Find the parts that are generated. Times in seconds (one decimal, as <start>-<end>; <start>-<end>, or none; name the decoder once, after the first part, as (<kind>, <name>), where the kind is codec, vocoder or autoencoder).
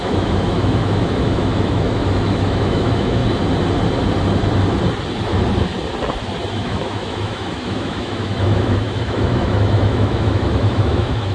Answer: 0.0-3.2 (autoencoder, DAC-VAE); 6.5-11.3